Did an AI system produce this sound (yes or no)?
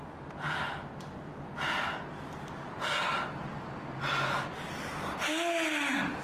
no